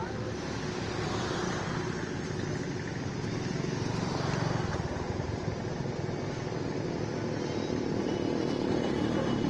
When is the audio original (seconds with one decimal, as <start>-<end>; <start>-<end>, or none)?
0.0-9.5

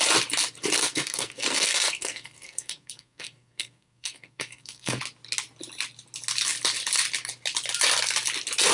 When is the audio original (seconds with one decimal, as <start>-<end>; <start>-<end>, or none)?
0.0-0.8; 5.0-8.7

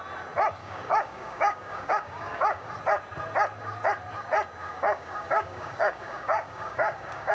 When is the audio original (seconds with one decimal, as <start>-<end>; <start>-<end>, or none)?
0.0-0.6; 2.7-4.6

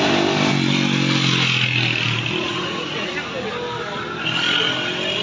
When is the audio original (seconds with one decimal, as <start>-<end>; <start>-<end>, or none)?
0.0-2.4; 3.1-5.2

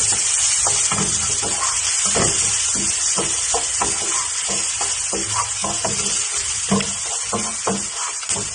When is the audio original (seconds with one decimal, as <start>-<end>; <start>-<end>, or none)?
0.0-8.5

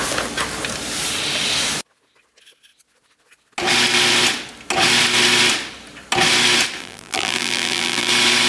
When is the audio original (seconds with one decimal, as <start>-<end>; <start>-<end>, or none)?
0.0-6.8; 8.1-8.5

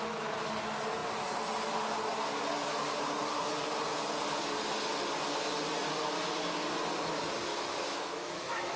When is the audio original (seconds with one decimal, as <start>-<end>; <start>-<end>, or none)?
0.0-7.5

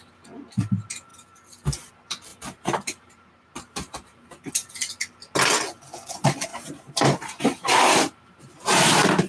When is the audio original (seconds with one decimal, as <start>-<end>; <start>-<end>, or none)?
0.0-2.3; 4.5-6.5